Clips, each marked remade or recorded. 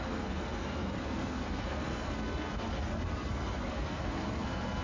remade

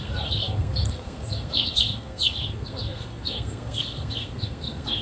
remade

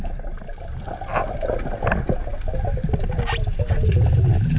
recorded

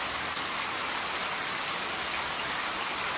recorded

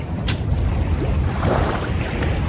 remade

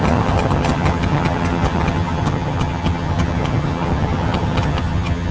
remade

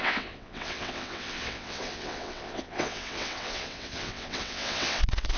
remade